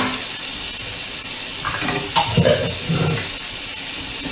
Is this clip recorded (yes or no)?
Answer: yes